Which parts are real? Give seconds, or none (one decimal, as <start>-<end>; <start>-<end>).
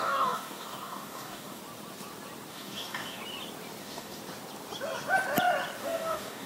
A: 1.6-2.5; 3.2-3.8; 4.2-5.8